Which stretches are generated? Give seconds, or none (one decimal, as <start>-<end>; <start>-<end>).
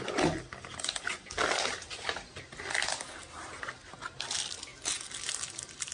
none